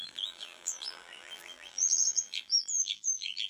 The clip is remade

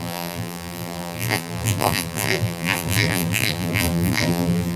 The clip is remade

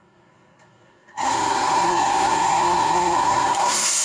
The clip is remade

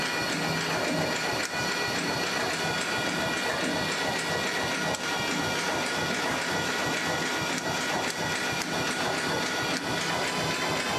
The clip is recorded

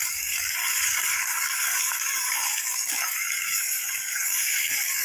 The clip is remade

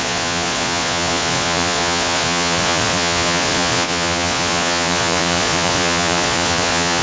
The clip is remade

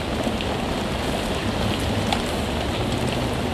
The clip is recorded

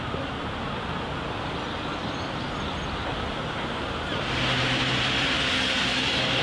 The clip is recorded